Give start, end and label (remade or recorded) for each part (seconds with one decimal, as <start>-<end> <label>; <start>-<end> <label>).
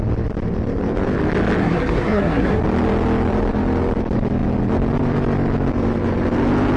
0.0-1.6 recorded; 1.6-2.6 remade; 2.6-6.8 recorded